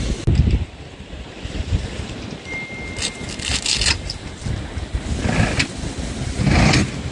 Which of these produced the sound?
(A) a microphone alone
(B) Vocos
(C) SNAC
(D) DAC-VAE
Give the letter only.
A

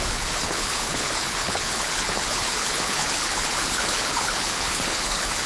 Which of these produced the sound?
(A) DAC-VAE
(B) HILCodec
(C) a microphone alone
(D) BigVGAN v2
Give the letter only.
B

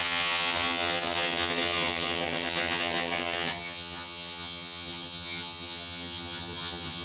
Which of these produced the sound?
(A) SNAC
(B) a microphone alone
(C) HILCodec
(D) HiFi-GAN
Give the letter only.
D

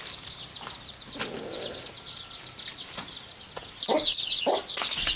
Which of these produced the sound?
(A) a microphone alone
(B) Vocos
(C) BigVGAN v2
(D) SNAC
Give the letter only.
A